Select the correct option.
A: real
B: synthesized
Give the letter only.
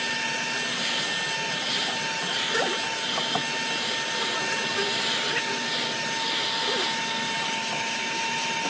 A